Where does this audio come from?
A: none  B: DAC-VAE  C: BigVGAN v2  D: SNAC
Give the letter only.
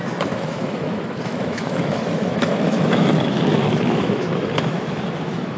B